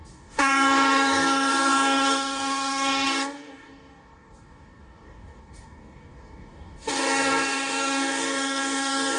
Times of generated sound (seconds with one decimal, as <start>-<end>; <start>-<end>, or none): 0.0-9.2